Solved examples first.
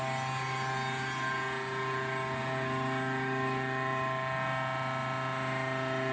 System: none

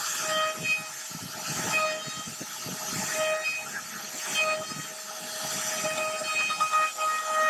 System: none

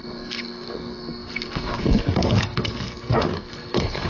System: codec, SNAC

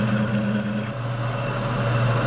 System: none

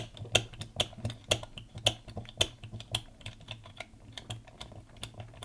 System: none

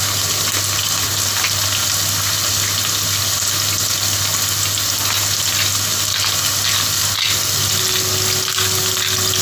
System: none